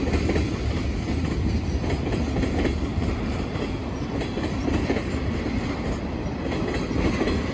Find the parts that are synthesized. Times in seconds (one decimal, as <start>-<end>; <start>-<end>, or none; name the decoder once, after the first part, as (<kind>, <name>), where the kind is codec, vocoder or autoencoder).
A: 2.9-3.7 (vocoder, BigVGAN v2)